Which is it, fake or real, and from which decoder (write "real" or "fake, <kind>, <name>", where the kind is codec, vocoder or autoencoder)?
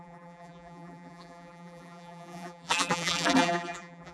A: fake, vocoder, BigVGAN v2